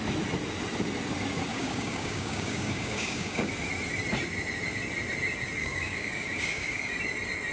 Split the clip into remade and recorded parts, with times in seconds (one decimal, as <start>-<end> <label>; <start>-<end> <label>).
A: 0.0-1.5 recorded; 1.5-3.5 remade; 3.5-5.6 recorded; 5.6-6.9 remade; 6.9-7.5 recorded